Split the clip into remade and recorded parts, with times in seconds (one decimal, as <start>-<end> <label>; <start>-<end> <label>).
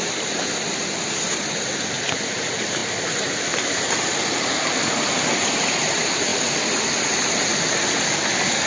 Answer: 0.0-8.7 recorded